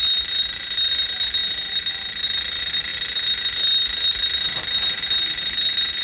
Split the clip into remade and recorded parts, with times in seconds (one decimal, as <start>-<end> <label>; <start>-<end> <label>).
0.0-6.0 recorded